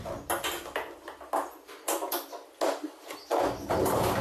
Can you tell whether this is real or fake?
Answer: real